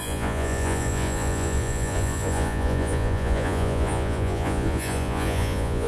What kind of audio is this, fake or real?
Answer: fake